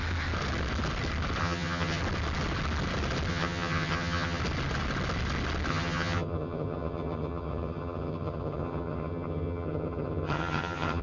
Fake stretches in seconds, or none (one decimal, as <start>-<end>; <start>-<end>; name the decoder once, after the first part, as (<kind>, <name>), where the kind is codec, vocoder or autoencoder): 1.4-2.0 (vocoder, HiFi-GAN); 3.3-4.4; 5.7-11.0